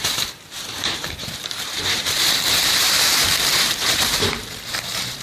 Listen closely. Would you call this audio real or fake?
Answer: fake